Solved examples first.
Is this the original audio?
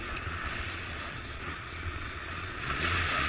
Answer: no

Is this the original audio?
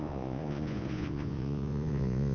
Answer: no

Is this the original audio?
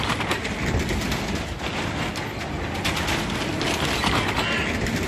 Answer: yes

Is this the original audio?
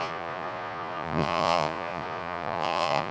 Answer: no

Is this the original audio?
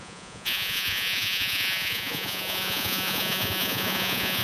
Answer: no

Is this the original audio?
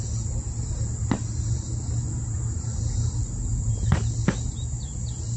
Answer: yes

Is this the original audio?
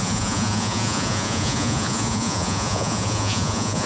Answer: no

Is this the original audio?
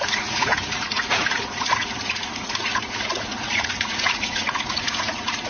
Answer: no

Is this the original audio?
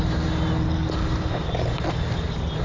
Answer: yes